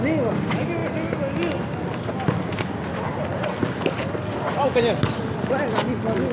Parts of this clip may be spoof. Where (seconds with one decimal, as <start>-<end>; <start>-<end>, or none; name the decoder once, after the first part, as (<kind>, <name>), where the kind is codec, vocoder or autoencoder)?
none